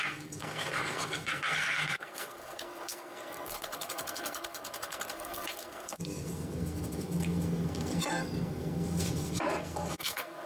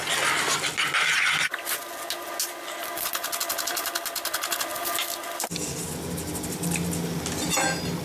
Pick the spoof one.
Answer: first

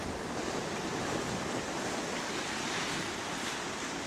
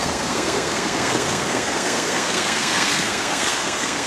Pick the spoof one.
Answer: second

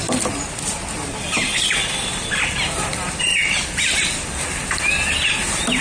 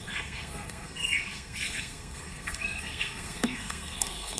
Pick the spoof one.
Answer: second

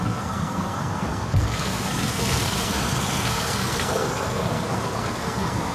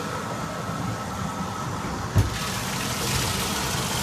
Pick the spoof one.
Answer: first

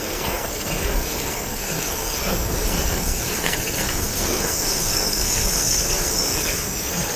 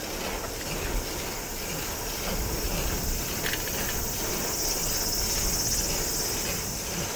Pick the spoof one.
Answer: first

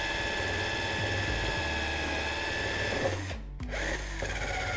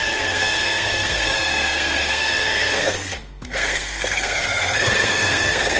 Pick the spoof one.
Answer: second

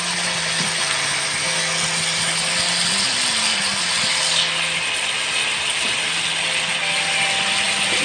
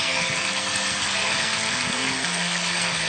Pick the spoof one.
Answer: second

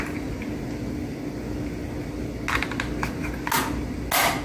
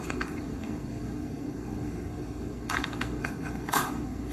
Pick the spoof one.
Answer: second